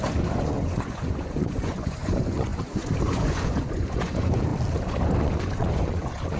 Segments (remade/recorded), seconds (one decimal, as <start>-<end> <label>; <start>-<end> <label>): 0.0-4.5 remade; 4.5-5.2 recorded; 5.2-6.4 remade